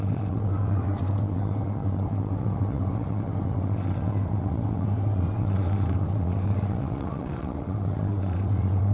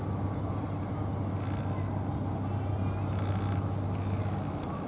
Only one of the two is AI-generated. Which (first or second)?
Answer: first